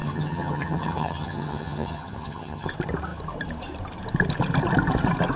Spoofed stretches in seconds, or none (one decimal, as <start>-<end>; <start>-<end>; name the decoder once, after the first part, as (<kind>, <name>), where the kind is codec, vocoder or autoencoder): 0.0-2.7 (vocoder, HiFi-GAN)